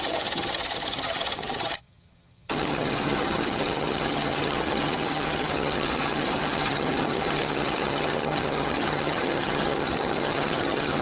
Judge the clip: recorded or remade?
remade